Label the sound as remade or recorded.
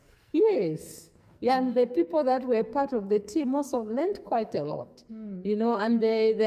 remade